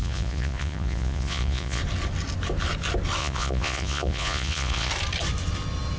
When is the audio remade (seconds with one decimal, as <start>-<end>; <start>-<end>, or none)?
0.0-1.8; 3.2-4.9